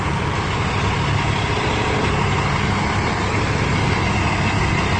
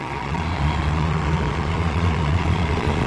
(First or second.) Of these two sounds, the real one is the first